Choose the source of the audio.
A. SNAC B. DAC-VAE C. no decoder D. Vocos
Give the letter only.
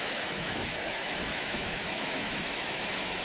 B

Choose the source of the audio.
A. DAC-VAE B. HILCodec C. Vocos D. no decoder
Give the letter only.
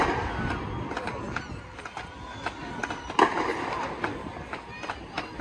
D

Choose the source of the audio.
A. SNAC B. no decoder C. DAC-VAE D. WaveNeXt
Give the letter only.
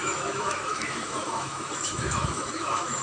C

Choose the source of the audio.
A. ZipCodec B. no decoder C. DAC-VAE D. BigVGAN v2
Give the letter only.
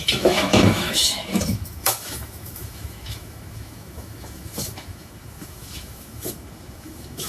C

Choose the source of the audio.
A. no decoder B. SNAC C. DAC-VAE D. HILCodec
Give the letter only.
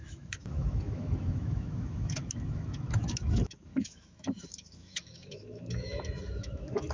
C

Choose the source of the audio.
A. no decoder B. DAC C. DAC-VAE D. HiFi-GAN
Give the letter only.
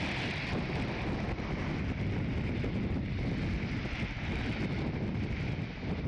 A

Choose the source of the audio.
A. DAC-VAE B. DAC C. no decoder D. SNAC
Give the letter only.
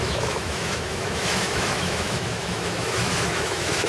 A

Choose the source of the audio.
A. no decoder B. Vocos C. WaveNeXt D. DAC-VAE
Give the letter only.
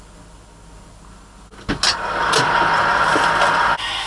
A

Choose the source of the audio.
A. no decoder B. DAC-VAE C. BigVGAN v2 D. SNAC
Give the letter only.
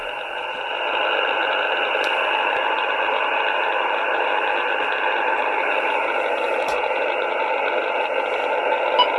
A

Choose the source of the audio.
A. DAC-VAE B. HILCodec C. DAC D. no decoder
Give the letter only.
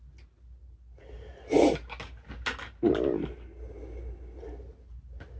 D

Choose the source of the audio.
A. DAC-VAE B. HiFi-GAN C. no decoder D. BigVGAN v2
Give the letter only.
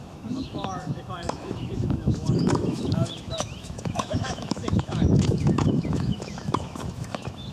A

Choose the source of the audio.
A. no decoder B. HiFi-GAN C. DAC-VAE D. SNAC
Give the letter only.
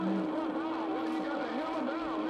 A